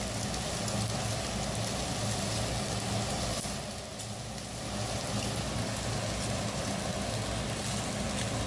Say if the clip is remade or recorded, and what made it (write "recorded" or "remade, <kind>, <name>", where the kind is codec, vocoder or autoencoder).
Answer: recorded